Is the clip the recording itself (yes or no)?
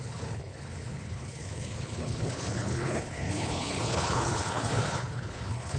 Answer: no